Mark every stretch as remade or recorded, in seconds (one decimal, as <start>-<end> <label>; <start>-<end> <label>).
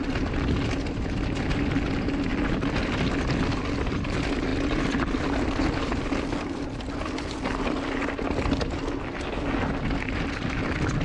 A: 0.0-11.0 recorded